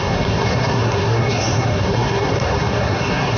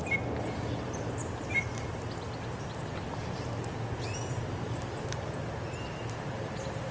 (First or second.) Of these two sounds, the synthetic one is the first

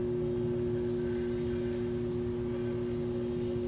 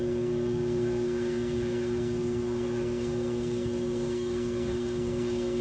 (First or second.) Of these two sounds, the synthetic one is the second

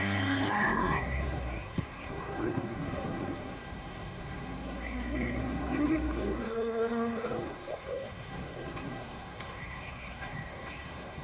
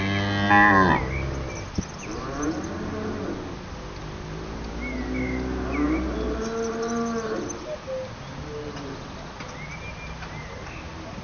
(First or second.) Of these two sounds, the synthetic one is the first